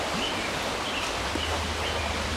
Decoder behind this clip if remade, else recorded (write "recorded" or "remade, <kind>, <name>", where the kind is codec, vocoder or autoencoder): recorded